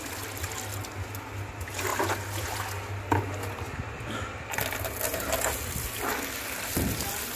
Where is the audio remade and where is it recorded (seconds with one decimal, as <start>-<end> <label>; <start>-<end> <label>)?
0.0-7.4 recorded

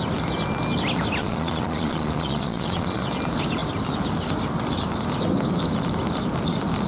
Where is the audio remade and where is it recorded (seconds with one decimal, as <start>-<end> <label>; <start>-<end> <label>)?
0.0-1.2 recorded; 1.2-3.0 remade; 3.0-6.9 recorded

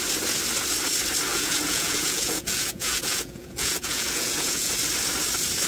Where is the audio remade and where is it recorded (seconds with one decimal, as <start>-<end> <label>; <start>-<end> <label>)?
0.0-1.3 recorded; 1.3-4.7 remade; 4.7-5.7 recorded

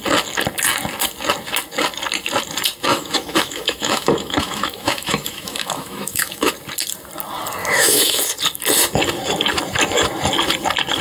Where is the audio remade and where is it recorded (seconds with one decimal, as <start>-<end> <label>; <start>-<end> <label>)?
0.0-2.9 recorded; 2.9-6.5 remade; 6.5-7.6 recorded; 7.6-8.2 remade; 8.2-11.0 recorded

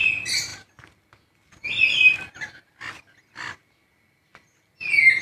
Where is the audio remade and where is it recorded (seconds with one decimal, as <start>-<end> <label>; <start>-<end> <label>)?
0.0-5.2 recorded

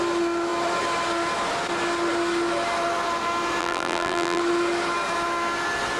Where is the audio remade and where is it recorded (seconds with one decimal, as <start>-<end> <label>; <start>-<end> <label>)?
0.0-3.6 recorded; 3.6-4.4 remade; 4.4-6.0 recorded

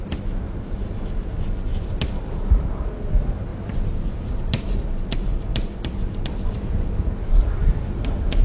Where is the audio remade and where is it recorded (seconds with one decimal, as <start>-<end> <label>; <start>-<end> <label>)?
0.0-1.7 recorded; 1.7-2.6 remade; 2.6-3.5 recorded; 3.5-4.3 remade; 4.3-5.3 recorded; 5.3-5.9 remade; 5.9-8.4 recorded